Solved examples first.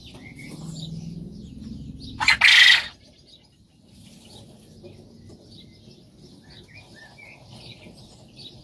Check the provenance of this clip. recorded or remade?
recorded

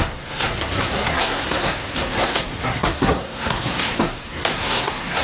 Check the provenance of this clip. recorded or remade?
remade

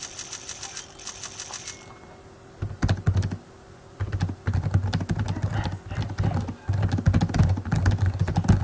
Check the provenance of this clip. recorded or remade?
recorded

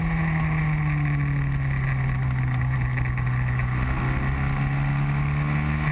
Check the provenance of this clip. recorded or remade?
recorded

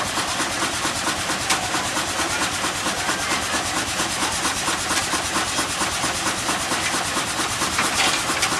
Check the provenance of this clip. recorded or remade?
recorded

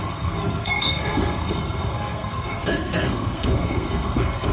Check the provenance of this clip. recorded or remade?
remade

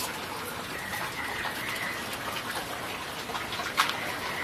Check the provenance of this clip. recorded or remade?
recorded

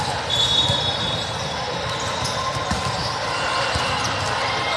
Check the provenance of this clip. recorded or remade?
recorded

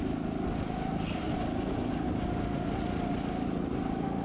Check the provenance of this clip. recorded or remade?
recorded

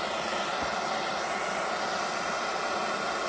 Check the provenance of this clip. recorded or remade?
recorded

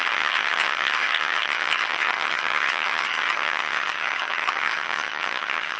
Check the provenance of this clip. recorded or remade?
remade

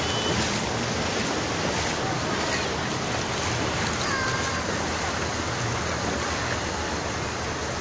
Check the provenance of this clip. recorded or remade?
recorded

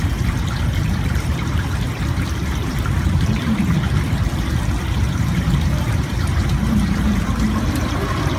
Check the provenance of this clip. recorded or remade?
remade